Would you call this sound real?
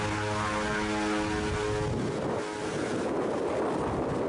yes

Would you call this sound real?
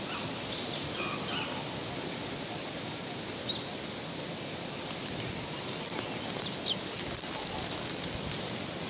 yes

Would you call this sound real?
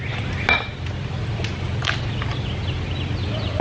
yes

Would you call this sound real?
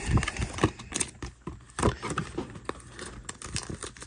yes